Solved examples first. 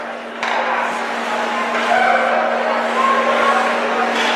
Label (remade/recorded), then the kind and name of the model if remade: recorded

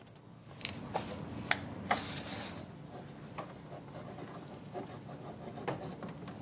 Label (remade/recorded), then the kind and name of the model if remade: recorded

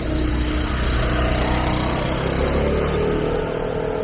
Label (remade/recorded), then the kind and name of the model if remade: recorded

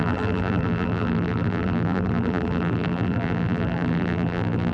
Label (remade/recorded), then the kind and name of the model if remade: remade, vocoder, BigVGAN v2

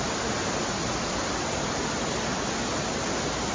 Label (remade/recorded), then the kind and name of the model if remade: recorded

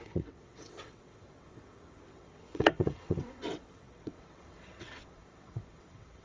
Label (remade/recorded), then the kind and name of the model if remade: remade, vocoder, WaveNeXt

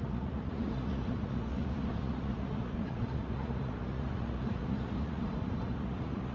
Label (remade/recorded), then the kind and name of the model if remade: remade, vocoder, Vocos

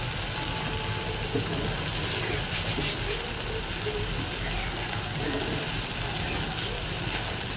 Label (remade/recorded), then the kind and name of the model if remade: recorded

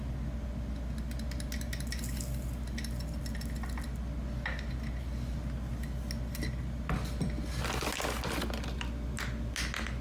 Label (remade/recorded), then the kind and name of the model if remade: recorded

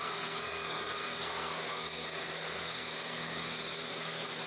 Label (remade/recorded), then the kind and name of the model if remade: remade, codec, SNAC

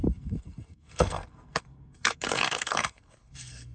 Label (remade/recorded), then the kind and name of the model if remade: remade, codec, SNAC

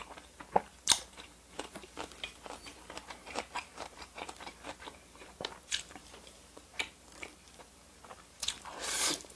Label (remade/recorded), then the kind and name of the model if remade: remade, vocoder, BigVGAN v2